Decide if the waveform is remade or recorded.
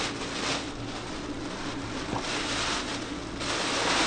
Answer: recorded